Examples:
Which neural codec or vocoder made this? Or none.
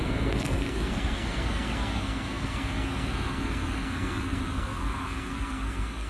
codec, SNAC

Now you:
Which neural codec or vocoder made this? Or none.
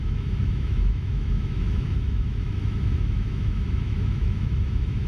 autoencoder, DAC-VAE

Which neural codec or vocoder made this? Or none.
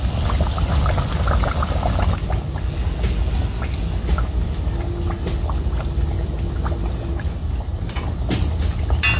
none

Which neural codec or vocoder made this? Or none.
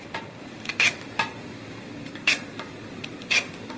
none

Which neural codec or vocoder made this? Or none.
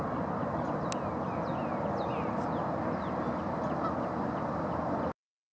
none